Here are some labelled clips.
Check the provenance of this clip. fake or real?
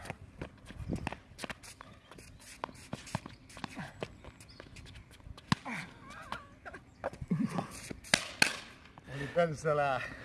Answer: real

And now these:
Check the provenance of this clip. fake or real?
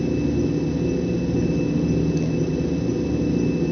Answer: real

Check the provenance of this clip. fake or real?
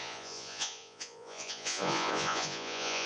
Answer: fake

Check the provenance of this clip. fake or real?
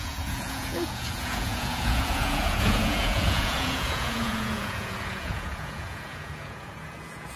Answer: fake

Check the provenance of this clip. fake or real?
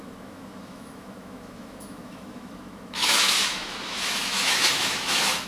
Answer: fake